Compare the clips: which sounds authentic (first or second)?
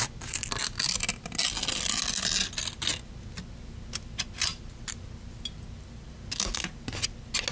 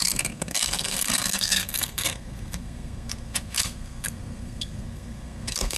first